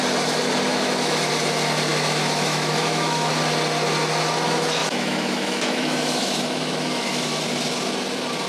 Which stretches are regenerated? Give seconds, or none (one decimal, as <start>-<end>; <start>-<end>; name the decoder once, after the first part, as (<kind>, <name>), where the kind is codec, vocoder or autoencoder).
0.7-1.3 (autoencoder, DAC-VAE); 1.9-3.3; 4.8-7.4